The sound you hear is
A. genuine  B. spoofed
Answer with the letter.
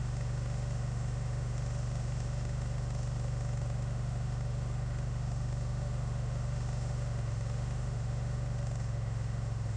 B